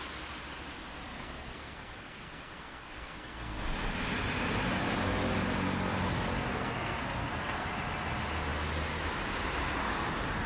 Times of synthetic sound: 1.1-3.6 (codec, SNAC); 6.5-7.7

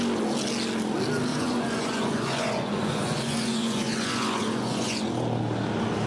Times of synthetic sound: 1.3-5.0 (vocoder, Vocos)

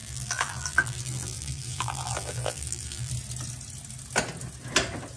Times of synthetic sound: 0.0-3.1 (vocoder, BigVGAN v2)

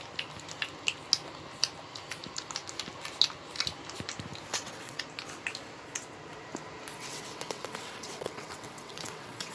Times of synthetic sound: 4.5-5.0 (vocoder, WaveNeXt); 7.0-9.5

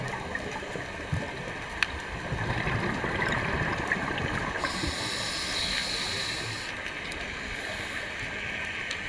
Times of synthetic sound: none

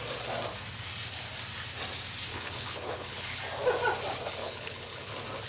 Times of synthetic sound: 2.3-3.4 (codec, HILCodec); 4.4-5.1

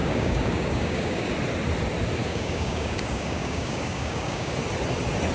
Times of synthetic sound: 0.0-1.3 (codec, DAC); 2.2-4.5

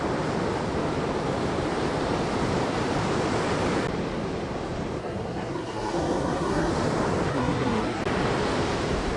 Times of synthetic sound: 5.0-6.7 (codec, SNAC); 7.3-8.0